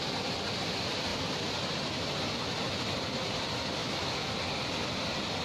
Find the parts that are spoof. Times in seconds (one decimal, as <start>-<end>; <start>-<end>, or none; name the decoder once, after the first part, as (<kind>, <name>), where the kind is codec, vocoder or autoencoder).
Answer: 3.8-4.3 (autoencoder, DAC-VAE)